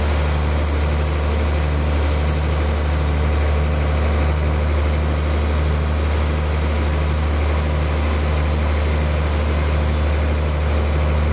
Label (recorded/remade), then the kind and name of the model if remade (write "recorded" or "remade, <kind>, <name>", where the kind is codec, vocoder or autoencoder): recorded